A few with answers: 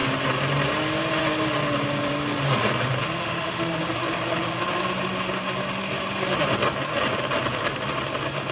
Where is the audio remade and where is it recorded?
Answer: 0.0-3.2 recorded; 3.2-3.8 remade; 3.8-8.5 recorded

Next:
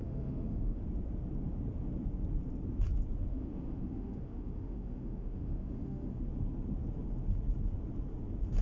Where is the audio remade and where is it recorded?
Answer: 0.0-0.8 remade; 0.8-3.3 recorded; 3.3-6.2 remade; 6.2-8.6 recorded

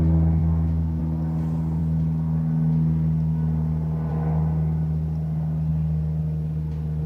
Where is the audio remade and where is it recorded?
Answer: 0.0-0.4 recorded; 0.4-1.0 remade; 1.0-7.1 recorded